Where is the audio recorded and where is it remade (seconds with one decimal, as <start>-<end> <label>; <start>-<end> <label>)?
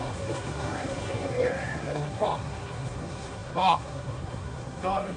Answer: 0.0-5.2 remade